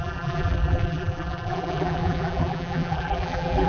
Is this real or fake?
fake